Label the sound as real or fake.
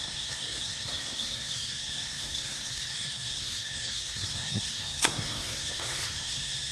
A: fake